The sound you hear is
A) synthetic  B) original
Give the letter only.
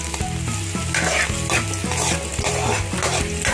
B